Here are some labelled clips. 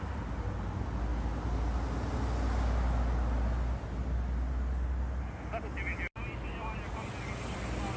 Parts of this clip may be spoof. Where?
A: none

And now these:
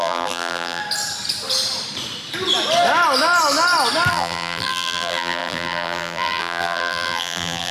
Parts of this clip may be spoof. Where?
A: 0.0-0.8 (vocoder, BigVGAN v2); 4.1-7.7

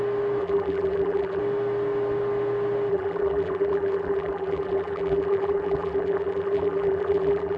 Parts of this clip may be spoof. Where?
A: 0.4-1.4 (vocoder, BigVGAN v2); 2.9-7.6

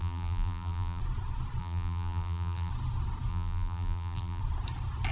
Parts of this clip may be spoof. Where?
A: 0.0-1.0 (vocoder, BigVGAN v2); 1.6-2.7; 3.3-4.4

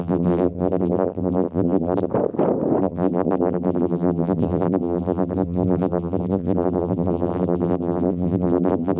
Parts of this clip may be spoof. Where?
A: 0.0-2.1 (vocoder, BigVGAN v2); 2.8-9.0

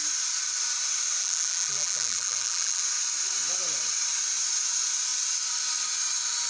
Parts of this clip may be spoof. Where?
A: 1.2-2.8 (vocoder, BigVGAN v2)

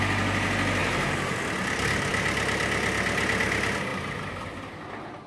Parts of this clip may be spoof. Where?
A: 0.8-1.4 (vocoder, BigVGAN v2)